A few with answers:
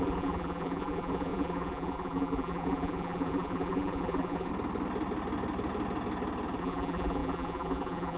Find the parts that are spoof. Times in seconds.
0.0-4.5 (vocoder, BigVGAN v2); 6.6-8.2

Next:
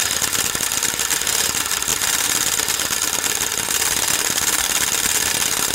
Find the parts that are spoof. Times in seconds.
none